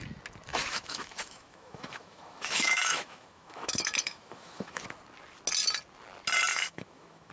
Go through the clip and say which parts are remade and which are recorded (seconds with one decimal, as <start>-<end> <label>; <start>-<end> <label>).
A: 0.0-0.5 recorded; 0.5-4.8 remade; 4.8-6.5 recorded; 6.5-7.3 remade

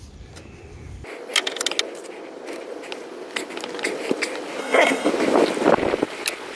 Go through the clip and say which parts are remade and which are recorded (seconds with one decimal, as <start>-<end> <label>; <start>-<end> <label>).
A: 0.0-4.6 recorded; 4.6-5.1 remade; 5.1-6.6 recorded